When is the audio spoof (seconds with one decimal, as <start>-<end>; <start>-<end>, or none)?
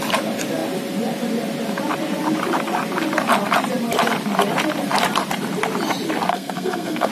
6.3-7.1